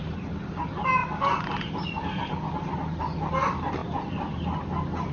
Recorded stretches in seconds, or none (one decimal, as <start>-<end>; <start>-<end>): 0.0-5.1